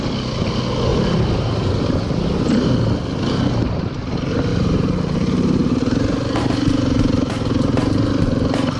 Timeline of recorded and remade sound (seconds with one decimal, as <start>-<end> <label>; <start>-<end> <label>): 0.0-0.9 recorded; 0.9-2.7 remade; 2.7-4.5 recorded; 4.5-8.0 remade; 8.0-8.8 recorded